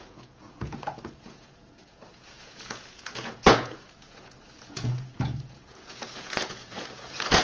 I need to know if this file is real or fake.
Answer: fake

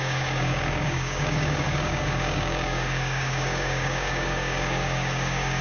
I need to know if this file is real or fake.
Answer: fake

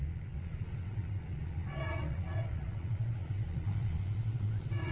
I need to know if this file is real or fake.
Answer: fake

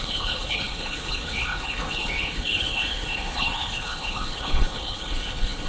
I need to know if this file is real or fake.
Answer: fake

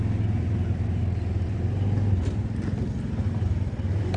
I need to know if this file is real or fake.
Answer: real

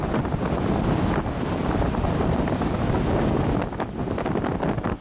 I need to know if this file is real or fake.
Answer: real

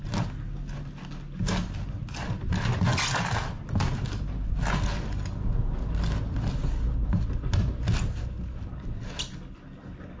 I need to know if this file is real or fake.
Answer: real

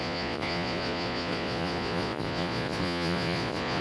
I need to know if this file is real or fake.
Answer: fake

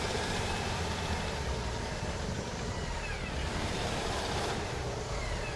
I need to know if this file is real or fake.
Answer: fake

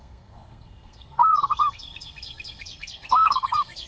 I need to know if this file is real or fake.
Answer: fake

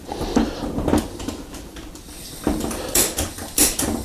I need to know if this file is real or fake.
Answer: fake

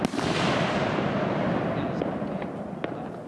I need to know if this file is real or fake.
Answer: real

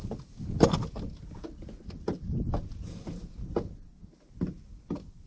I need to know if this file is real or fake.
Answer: real